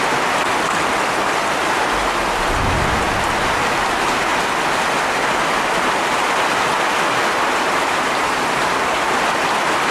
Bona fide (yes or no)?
yes